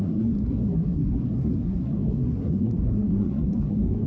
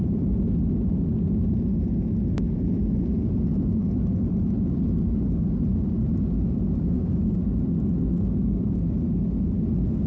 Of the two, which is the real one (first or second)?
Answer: second